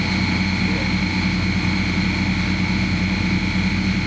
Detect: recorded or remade recorded